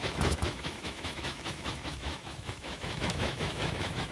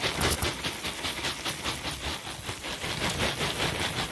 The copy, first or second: first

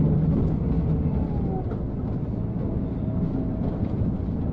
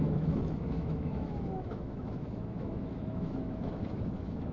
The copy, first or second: second